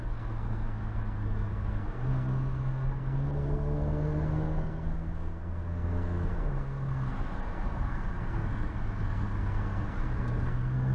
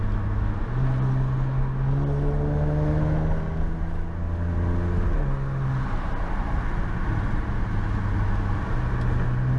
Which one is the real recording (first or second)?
second